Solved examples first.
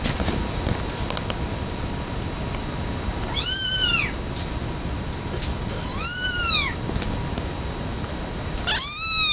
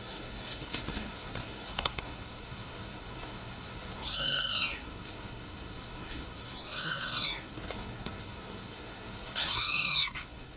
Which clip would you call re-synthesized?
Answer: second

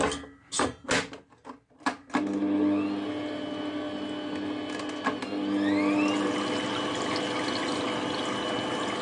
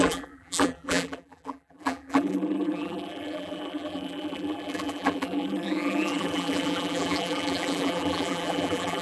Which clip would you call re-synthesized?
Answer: second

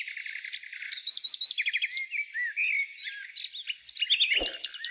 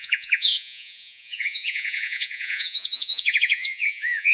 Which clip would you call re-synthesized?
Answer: second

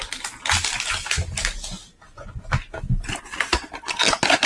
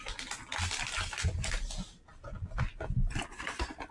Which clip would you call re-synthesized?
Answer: second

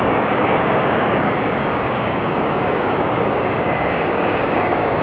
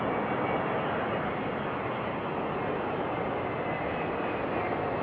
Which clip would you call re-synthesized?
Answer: first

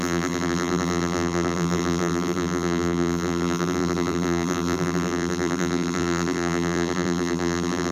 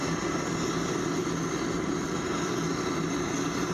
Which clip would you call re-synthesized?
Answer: first